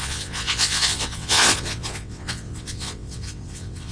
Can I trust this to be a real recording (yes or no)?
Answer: no